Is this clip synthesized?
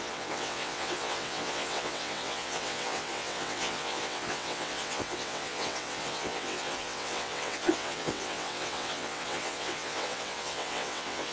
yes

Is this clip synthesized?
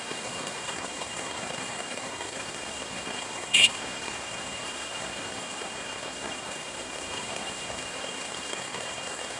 yes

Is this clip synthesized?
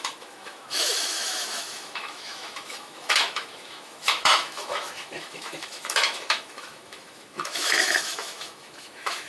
yes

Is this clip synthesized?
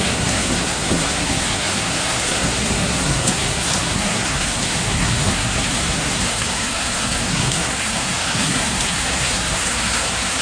yes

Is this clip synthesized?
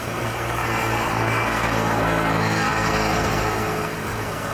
yes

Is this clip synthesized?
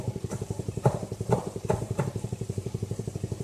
yes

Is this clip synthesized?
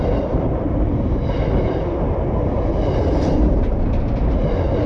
no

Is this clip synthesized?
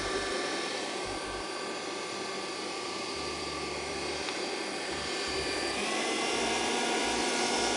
yes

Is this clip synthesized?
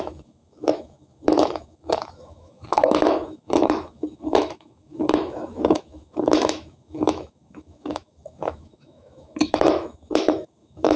yes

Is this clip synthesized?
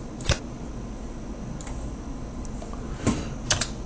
no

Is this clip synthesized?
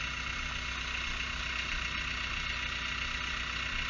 no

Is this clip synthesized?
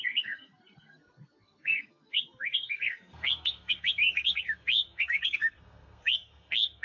yes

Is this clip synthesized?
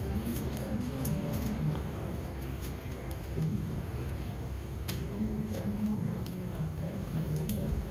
yes